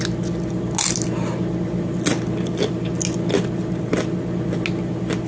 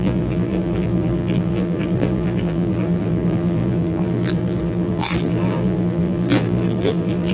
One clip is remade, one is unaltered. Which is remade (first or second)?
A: second